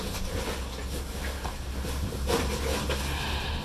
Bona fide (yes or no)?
yes